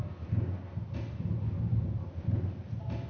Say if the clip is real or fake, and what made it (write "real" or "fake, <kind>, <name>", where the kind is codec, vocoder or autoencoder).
real